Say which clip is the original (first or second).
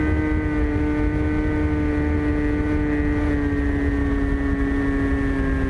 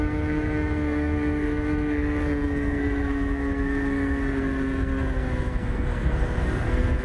first